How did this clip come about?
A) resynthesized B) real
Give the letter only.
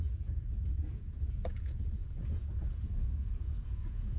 A